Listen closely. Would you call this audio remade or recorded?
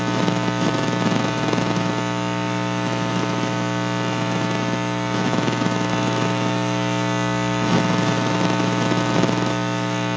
remade